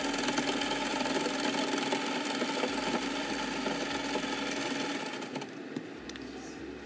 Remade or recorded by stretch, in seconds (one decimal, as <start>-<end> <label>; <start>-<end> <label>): 0.0-0.9 recorded; 0.9-3.3 remade; 3.3-4.9 recorded; 4.9-5.8 remade; 5.8-6.9 recorded